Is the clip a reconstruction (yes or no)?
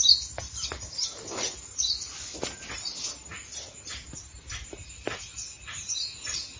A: no